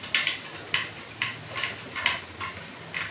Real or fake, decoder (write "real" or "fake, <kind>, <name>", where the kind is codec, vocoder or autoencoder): real